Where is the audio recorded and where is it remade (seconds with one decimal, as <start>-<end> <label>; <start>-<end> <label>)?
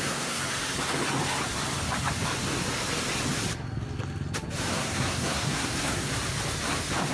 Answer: 0.0-0.4 remade; 0.4-4.7 recorded; 4.7-6.1 remade; 6.1-7.1 recorded